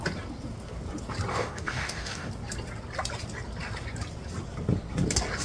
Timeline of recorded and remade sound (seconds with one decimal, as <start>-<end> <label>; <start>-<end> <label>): 0.0-1.3 recorded; 1.3-2.3 remade; 2.3-5.4 recorded